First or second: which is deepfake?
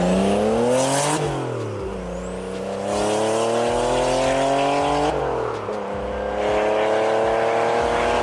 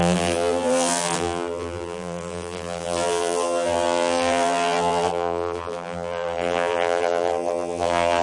second